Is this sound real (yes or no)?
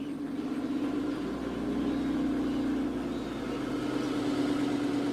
yes